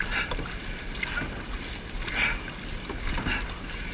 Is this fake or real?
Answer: real